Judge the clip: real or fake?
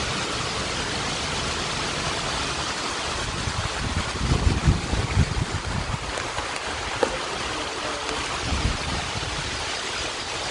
real